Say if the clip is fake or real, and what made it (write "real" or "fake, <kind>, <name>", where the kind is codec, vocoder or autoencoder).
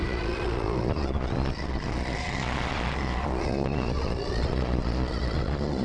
fake, vocoder, Vocos